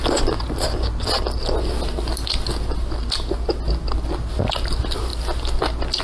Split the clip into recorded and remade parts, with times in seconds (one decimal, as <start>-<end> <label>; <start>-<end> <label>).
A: 0.0-6.0 recorded

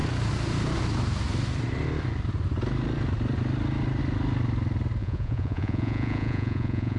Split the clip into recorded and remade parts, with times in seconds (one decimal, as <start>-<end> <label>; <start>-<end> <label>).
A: 0.0-5.0 recorded; 5.0-7.0 remade

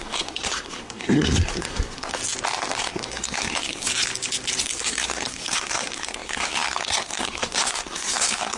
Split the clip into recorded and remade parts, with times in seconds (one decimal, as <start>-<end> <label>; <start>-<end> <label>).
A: 0.0-2.2 remade; 2.2-2.8 recorded; 2.8-3.9 remade; 3.9-4.6 recorded; 4.6-8.6 remade

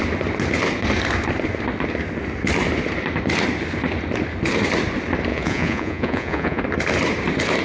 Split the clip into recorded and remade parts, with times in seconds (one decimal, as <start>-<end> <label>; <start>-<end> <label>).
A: 0.0-5.3 recorded; 5.3-6.6 remade; 6.6-7.6 recorded

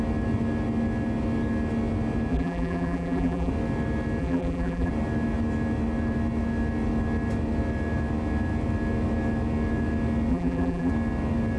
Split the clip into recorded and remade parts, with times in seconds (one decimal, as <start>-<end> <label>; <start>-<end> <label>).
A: 0.0-2.3 recorded; 2.3-3.5 remade; 3.5-4.2 recorded; 4.2-4.9 remade; 4.9-10.3 recorded; 10.3-10.9 remade; 10.9-11.6 recorded

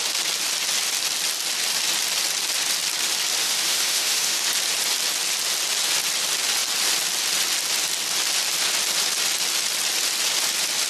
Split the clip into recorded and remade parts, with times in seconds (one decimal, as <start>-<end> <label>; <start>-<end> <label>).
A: 0.0-3.4 recorded; 3.4-4.5 remade; 4.5-10.9 recorded